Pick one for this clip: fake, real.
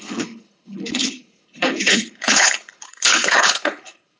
fake